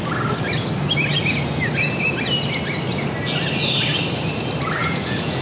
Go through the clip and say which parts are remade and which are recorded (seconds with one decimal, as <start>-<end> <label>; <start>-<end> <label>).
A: 0.0-4.8 recorded; 4.8-5.4 remade